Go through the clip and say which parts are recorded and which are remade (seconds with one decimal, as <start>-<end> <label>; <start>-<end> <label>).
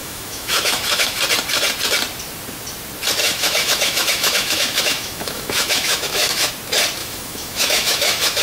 0.0-1.2 remade; 1.2-3.2 recorded; 3.2-6.5 remade; 6.5-7.0 recorded; 7.0-8.4 remade